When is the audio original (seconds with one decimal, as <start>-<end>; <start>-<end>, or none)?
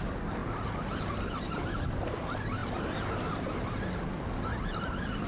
0.0-5.3